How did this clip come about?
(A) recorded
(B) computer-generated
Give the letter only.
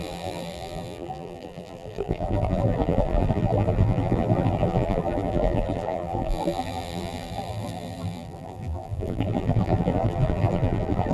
B